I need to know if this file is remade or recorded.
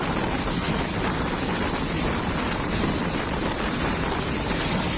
recorded